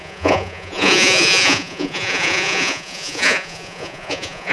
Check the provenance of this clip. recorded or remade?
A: remade